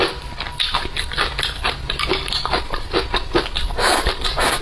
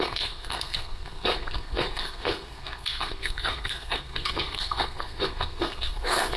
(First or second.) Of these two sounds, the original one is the first